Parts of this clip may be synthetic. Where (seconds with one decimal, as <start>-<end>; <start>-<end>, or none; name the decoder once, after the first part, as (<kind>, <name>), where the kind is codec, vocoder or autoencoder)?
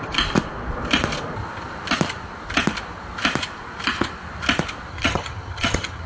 4.9-6.1 (vocoder, HiFi-GAN)